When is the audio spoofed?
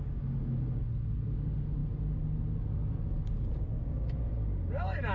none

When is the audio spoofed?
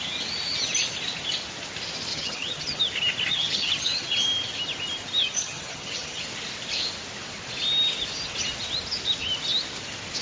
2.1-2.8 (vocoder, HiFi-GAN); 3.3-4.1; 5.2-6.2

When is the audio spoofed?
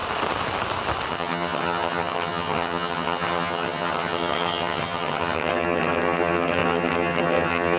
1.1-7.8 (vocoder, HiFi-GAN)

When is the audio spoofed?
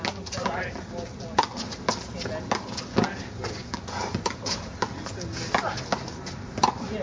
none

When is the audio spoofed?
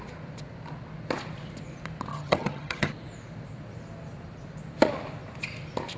2.1-2.9 (vocoder, HiFi-GAN)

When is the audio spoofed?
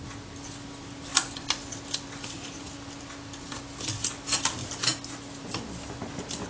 none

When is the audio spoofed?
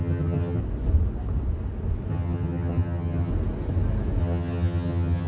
0.0-0.6 (vocoder, HiFi-GAN); 2.1-3.3; 4.2-5.3